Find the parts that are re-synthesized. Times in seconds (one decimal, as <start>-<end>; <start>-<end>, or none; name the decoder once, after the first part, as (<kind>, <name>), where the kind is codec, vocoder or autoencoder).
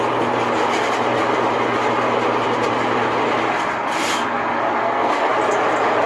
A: 4.8-5.3 (codec, SNAC)